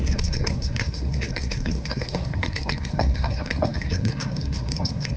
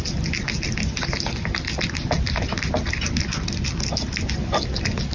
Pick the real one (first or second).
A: second